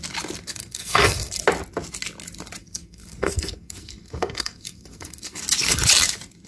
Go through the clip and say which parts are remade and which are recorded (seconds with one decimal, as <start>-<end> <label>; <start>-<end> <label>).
0.0-0.6 recorded; 0.6-1.4 remade; 1.4-2.6 recorded; 2.6-5.4 remade; 5.4-6.5 recorded